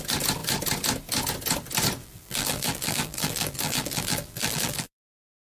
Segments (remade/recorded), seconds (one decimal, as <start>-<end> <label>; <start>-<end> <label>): 0.0-2.0 recorded; 2.0-5.5 remade